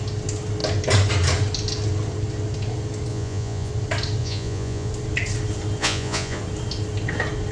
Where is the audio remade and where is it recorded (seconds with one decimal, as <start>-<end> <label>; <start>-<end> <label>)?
0.0-3.1 recorded; 3.1-3.7 remade; 3.7-4.2 recorded; 4.2-4.9 remade; 4.9-5.8 recorded; 5.8-6.4 remade; 6.4-7.5 recorded